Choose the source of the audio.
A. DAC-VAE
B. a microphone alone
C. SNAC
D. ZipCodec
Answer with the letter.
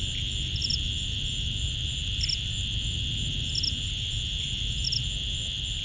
B